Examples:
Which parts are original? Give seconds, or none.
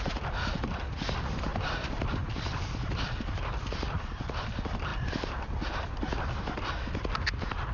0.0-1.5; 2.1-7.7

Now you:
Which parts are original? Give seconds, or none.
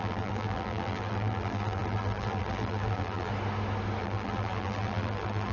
3.3-4.0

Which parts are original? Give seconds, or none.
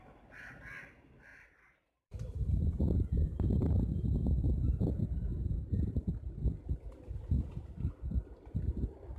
0.0-1.3; 6.1-9.2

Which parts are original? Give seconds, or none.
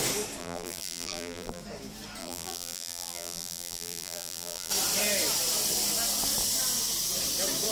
0.0-0.4; 1.6-2.2; 4.7-7.7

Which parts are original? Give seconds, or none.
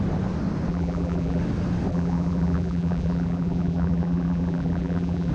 0.0-0.7; 1.4-1.9